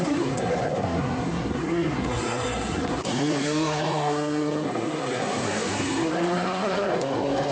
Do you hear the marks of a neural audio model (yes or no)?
yes